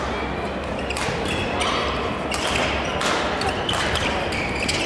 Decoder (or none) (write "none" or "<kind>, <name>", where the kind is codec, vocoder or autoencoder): none